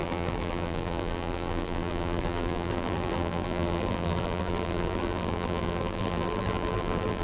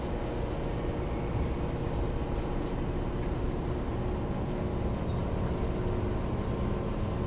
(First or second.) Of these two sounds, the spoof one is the first